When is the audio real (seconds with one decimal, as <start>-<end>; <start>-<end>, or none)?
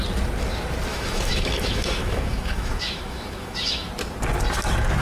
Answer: 0.0-0.9; 3.9-5.0